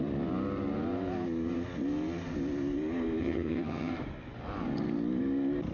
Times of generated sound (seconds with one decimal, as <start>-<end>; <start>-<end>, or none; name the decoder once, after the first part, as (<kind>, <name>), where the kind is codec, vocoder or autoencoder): 3.2-3.9 (vocoder, HiFi-GAN)